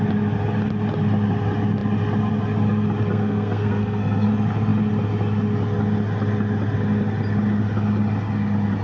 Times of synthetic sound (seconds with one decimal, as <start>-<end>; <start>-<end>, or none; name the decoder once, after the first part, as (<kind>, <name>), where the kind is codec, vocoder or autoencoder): 3.1-4.3 (codec, SNAC)